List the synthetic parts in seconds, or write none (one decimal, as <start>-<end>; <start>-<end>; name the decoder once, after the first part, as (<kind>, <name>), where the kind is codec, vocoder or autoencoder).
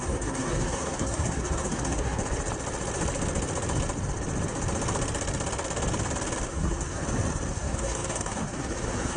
0.0-2.2 (codec, SNAC); 6.5-7.0; 7.5-9.2